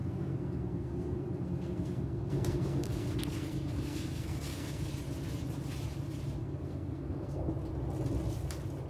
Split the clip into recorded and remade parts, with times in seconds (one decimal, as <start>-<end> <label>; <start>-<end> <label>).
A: 0.0-4.9 remade; 4.9-6.4 recorded; 6.4-7.5 remade; 7.5-8.9 recorded